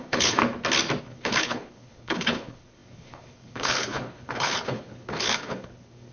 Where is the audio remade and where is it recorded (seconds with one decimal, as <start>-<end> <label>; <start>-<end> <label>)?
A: 0.0-0.4 remade; 0.4-1.0 recorded; 1.0-6.1 remade